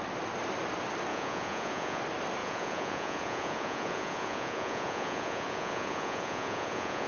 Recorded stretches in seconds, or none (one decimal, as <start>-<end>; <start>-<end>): 0.0-1.1; 2.0-2.4